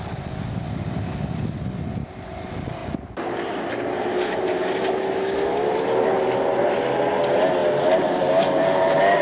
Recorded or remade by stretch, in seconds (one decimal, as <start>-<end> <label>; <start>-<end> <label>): 0.0-9.2 recorded